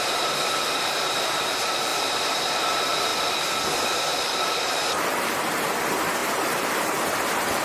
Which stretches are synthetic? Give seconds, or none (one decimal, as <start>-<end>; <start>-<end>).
0.0-3.1; 4.2-7.6